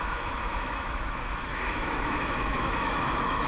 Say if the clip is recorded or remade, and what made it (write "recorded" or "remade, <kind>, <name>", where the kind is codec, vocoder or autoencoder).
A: remade, autoencoder, DAC-VAE